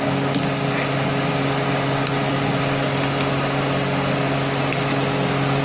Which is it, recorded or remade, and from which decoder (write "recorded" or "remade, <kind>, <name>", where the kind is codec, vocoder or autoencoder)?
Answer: recorded